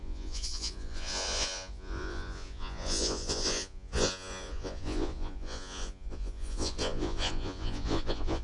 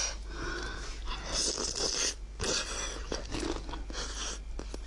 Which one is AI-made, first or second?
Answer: first